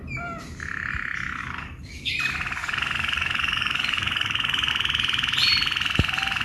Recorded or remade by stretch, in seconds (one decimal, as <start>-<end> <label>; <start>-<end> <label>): 0.0-1.4 recorded; 1.4-2.1 remade; 2.1-2.6 recorded; 2.6-4.7 remade; 4.7-6.4 recorded